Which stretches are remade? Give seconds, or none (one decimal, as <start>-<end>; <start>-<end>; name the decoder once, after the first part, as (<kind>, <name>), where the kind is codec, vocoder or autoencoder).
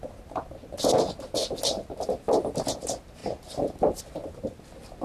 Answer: 1.4-1.9 (vocoder, BigVGAN v2); 3.2-4.0